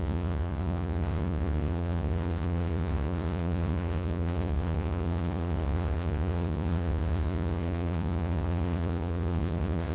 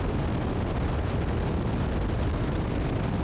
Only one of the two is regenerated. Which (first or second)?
first